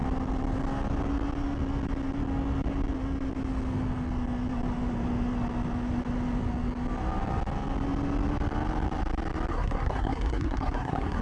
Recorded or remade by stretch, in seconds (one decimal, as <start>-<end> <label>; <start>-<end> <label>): 0.0-9.5 recorded; 9.5-11.2 remade